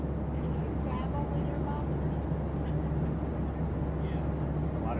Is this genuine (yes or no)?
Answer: yes